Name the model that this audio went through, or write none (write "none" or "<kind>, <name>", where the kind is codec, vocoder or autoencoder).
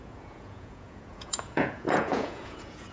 vocoder, Vocos